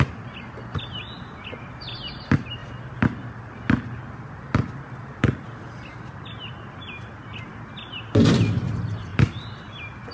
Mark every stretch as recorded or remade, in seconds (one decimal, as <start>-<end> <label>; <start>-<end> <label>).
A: 0.0-10.1 recorded